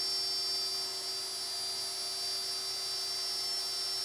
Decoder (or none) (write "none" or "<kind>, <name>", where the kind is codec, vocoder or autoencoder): none